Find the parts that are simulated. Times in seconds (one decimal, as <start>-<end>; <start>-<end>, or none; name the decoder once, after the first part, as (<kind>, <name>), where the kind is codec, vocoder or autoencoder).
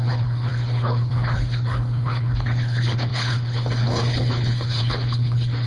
0.0-5.7 (codec, HILCodec)